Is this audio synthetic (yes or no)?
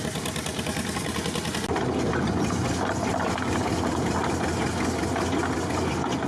no